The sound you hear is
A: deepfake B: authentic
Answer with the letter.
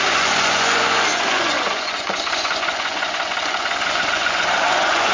A